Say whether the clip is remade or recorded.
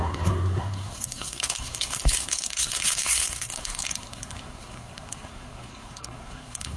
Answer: remade